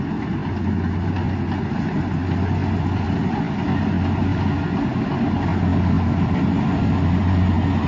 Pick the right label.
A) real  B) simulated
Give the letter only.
A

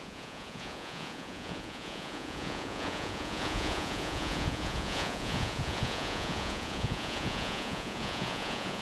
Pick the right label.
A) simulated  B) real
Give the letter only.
A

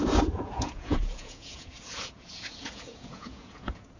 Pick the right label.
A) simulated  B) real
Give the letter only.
A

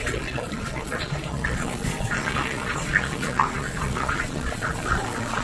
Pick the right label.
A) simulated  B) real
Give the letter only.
A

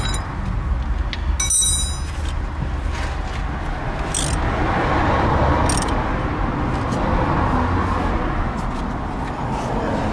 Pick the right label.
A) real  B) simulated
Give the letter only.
A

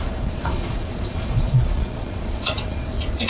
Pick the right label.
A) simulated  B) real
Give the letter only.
A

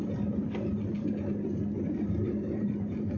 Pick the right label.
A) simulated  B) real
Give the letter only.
B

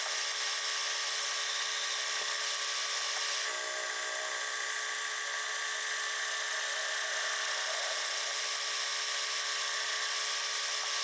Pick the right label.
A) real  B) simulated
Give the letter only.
A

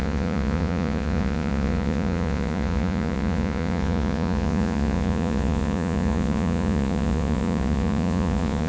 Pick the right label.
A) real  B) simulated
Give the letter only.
B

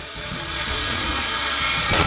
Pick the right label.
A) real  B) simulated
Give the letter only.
B